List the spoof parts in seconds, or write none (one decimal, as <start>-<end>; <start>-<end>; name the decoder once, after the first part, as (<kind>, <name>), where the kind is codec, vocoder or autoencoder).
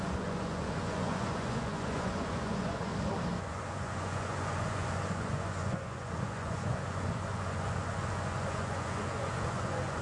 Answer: 0.0-2.9 (vocoder, Vocos); 3.4-10.0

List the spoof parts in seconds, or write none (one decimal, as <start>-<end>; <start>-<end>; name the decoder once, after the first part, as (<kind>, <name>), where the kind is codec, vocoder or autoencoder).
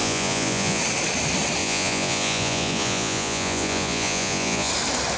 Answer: 0.0-0.8 (vocoder, Vocos); 1.6-4.7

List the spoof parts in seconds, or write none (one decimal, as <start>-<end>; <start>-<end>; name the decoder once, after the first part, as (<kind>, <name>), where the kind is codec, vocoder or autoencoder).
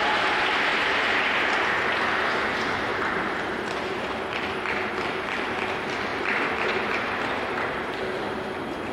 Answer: 0.7-1.6 (vocoder, BigVGAN v2); 2.9-4.9; 6.1-8.0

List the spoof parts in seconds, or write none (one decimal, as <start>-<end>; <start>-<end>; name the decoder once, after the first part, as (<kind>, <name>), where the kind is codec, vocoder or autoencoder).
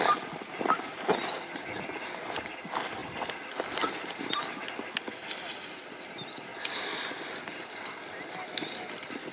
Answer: none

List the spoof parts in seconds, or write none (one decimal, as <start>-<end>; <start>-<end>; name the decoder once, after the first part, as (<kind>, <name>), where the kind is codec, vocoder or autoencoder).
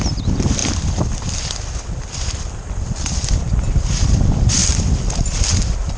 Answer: 0.6-3.4 (vocoder, BigVGAN v2)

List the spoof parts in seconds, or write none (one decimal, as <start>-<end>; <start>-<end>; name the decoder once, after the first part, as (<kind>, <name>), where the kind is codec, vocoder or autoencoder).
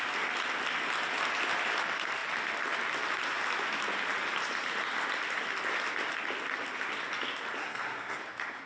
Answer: 7.6-8.2 (codec, SNAC)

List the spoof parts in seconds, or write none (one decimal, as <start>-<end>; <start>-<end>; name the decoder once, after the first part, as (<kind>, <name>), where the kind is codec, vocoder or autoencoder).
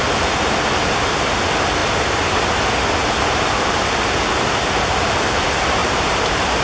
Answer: 5.8-6.6 (vocoder, BigVGAN v2)